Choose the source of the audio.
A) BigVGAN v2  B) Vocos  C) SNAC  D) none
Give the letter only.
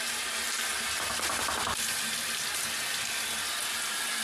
D